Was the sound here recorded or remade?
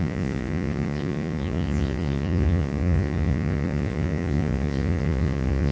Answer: remade